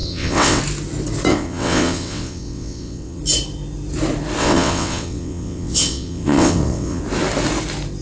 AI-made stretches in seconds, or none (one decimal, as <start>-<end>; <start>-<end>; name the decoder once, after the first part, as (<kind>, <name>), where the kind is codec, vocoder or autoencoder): 0.0-0.6 (vocoder, WaveNeXt); 1.3-3.2; 4.4-7.0